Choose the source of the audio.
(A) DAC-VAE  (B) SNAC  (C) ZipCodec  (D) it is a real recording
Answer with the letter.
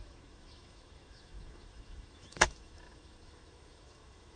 A